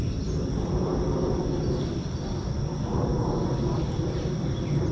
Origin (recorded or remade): recorded